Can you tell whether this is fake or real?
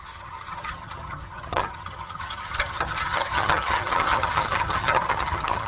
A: fake